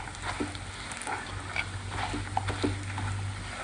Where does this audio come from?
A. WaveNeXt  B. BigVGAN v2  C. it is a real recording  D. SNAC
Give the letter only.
C